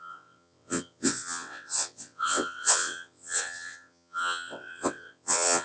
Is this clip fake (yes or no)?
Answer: yes